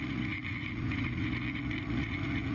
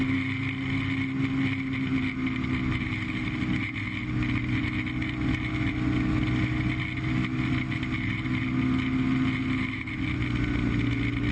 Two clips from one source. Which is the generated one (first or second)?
first